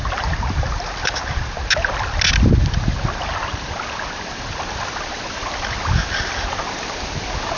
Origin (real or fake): real